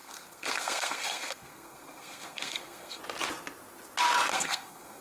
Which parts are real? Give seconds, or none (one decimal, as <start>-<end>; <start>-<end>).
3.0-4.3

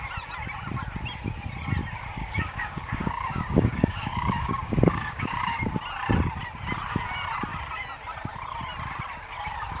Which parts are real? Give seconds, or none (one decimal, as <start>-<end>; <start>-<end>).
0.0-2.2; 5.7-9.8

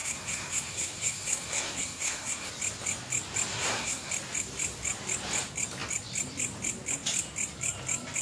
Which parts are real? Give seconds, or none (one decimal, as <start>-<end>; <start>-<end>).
2.5-3.5; 4.1-8.2

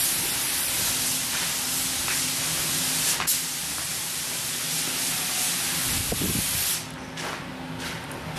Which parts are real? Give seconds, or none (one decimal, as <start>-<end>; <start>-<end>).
0.0-3.6; 4.5-8.4

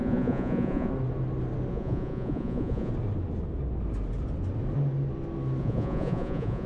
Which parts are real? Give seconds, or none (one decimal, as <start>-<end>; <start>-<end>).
0.9-1.7; 2.9-5.6

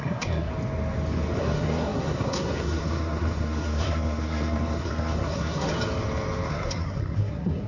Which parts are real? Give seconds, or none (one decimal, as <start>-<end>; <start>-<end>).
0.5-1.4; 5.7-6.5

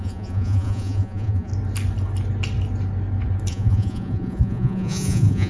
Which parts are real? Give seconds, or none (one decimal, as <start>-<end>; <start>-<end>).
1.5-3.5

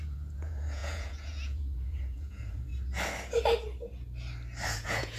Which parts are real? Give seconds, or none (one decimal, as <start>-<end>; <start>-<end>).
2.7-4.7